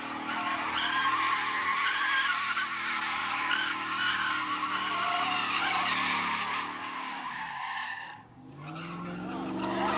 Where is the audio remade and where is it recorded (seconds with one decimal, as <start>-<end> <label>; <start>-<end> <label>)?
0.0-3.2 recorded; 3.2-5.6 remade; 5.6-6.8 recorded; 6.8-8.5 remade; 8.5-10.0 recorded